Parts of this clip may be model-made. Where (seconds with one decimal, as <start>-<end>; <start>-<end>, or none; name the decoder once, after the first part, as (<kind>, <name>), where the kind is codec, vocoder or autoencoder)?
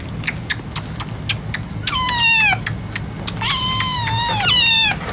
0.0-0.5 (vocoder, BigVGAN v2); 3.6-5.1